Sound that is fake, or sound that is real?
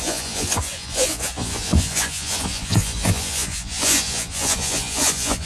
fake